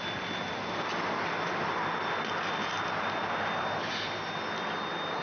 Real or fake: real